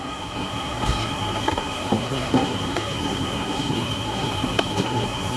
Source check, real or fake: fake